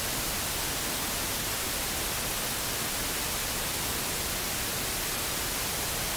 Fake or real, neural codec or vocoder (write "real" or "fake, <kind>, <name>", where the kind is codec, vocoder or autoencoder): real